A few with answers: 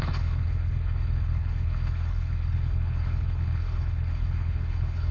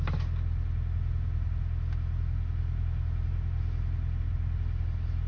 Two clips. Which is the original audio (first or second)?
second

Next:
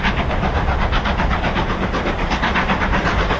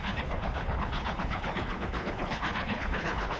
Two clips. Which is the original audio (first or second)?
first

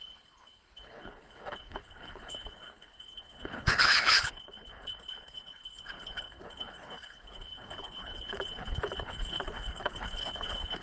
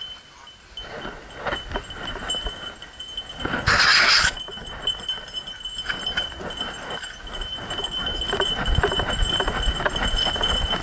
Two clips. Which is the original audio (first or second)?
second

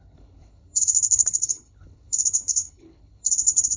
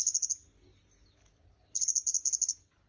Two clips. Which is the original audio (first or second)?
second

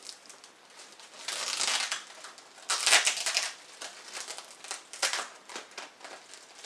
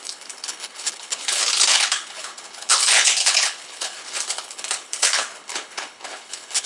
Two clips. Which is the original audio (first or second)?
first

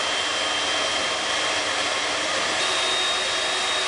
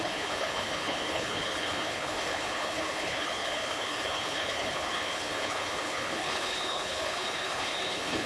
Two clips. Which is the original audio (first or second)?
first